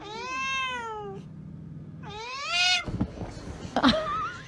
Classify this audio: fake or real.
real